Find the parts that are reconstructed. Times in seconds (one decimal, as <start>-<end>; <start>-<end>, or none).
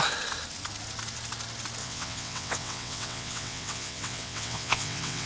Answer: 1.8-5.3